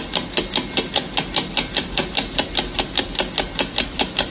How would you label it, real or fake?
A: real